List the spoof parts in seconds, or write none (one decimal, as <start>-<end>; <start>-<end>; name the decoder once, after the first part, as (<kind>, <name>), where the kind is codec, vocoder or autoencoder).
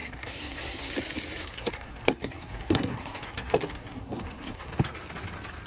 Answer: 0.0-0.9 (codec, SNAC); 1.4-4.8